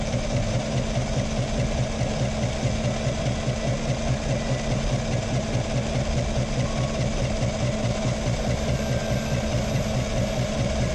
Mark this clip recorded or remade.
recorded